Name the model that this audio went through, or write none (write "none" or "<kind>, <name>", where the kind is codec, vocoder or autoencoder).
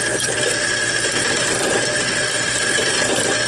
none